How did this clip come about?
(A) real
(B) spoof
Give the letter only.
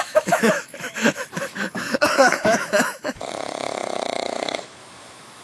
B